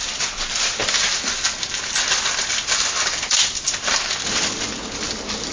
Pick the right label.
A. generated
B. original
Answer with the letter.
B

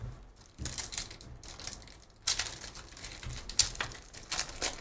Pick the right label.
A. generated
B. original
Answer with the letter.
B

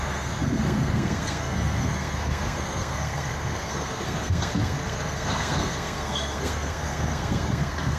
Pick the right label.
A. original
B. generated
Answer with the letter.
B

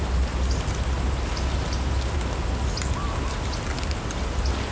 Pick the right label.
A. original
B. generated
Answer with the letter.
A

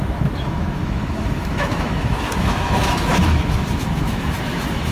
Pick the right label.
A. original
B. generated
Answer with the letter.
B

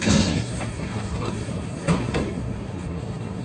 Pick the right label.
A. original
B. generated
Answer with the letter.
B